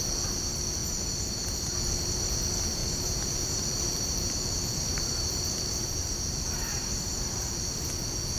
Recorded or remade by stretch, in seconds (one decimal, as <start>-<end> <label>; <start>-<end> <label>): 0.0-2.8 recorded; 2.8-7.6 remade; 7.6-8.4 recorded